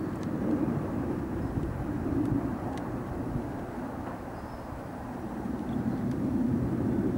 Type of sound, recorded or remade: remade